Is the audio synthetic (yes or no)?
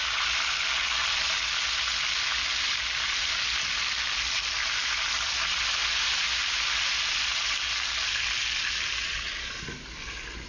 no